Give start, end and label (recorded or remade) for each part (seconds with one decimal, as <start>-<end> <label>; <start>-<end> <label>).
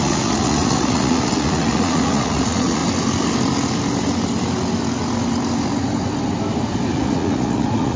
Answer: 0.0-2.8 remade; 2.8-6.9 recorded; 6.9-8.0 remade